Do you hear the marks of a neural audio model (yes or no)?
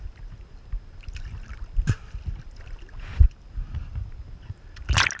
no